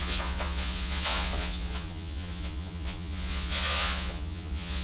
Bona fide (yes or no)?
no